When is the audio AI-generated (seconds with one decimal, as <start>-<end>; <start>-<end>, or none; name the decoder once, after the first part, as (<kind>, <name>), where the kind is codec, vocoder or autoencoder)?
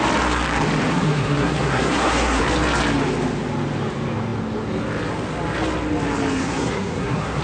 0.9-2.4 (codec, SNAC); 6.4-7.4